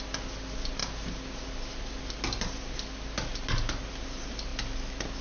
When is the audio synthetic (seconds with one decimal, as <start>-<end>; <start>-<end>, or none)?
none